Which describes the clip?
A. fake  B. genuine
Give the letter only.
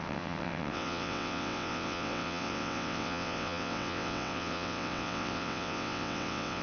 A